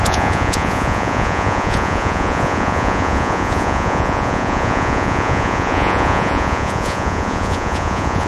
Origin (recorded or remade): remade